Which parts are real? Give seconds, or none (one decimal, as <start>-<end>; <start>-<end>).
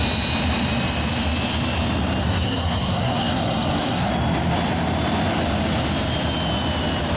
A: 0.0-2.2; 4.1-7.2